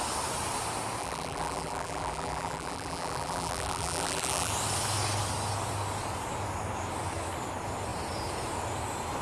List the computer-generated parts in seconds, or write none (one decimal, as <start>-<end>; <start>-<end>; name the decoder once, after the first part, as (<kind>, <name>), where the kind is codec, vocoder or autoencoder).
1.0-4.5 (vocoder, BigVGAN v2)